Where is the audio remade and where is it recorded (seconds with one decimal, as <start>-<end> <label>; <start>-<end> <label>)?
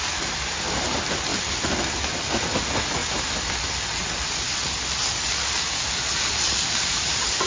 0.0-1.3 recorded; 1.3-2.1 remade; 2.1-3.0 recorded; 3.0-3.6 remade; 3.6-7.5 recorded